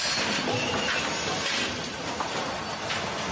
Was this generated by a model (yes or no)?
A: no